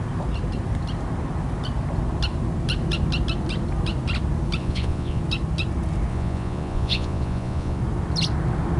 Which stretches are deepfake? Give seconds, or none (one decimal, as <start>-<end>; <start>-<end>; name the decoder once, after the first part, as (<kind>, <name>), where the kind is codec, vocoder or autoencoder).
4.6-5.2 (vocoder, Vocos); 6.1-7.8